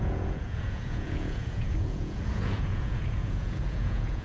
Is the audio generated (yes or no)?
yes